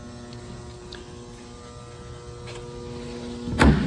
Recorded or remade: recorded